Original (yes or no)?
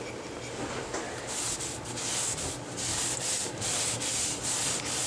yes